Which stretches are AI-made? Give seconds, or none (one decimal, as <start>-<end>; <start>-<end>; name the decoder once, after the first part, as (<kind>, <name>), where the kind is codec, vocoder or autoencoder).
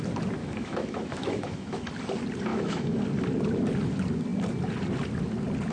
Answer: 0.4-1.9 (autoencoder, DAC-VAE); 2.5-3.0